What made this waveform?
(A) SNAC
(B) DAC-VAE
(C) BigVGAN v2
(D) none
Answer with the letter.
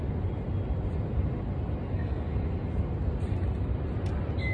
D